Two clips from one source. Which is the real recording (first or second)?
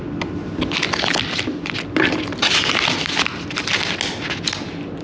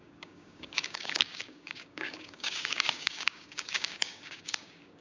first